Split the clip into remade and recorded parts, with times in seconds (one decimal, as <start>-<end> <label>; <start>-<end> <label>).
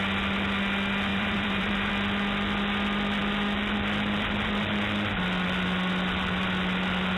0.0-1.1 recorded; 1.1-1.9 remade; 1.9-7.2 recorded